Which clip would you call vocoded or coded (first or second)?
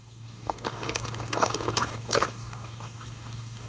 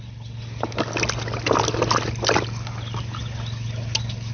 first